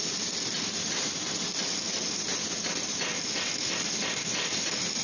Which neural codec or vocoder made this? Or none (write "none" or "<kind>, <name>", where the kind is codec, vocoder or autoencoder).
none